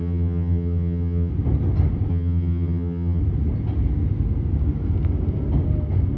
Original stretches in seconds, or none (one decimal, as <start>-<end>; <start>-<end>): 1.3-2.1; 3.2-6.2